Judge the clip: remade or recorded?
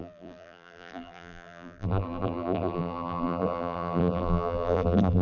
remade